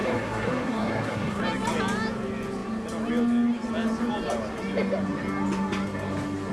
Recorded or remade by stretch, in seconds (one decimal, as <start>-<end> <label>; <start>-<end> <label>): 0.0-1.4 remade; 1.4-6.5 recorded